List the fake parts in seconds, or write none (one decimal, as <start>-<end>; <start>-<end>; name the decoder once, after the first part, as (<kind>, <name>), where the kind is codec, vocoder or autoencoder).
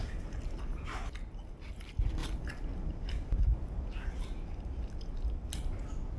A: none